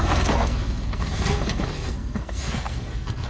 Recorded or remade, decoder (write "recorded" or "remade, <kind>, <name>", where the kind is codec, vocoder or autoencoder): remade, codec, SNAC